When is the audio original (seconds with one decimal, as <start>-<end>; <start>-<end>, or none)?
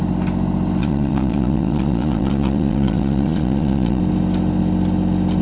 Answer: 0.0-0.8; 4.0-5.4